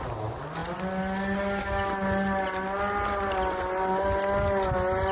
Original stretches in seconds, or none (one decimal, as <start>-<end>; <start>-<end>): 0.0-5.1